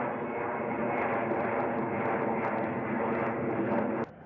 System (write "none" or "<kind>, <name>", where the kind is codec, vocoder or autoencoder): none